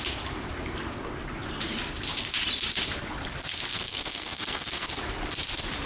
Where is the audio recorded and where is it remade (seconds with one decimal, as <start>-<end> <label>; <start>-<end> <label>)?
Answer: 0.0-3.7 recorded; 3.7-4.9 remade; 4.9-5.9 recorded